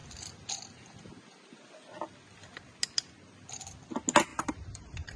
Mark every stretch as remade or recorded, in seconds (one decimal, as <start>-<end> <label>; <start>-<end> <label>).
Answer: 0.0-4.3 recorded; 4.3-5.2 remade